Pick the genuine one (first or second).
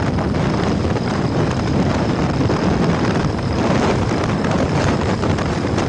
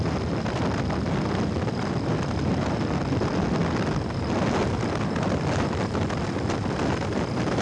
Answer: second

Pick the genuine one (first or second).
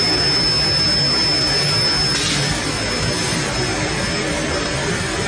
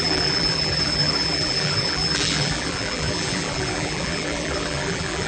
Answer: first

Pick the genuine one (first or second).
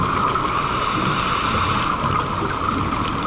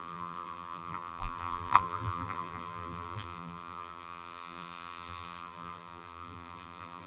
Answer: first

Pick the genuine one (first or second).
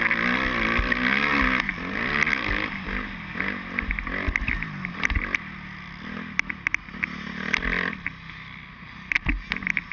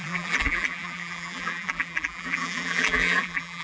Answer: first